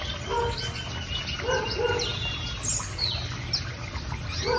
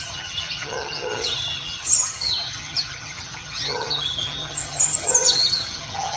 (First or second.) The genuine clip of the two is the first